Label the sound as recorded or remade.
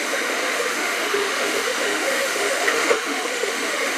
remade